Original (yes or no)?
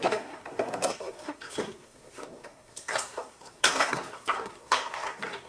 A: no